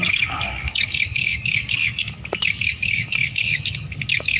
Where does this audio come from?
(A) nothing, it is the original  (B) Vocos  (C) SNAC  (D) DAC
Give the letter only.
D